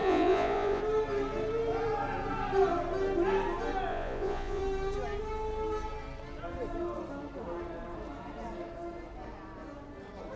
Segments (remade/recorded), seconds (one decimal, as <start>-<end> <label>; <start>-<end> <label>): 0.0-0.8 remade; 0.8-3.9 recorded; 3.9-4.6 remade; 4.6-10.4 recorded